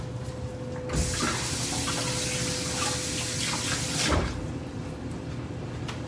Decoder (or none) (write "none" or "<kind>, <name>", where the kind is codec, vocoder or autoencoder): none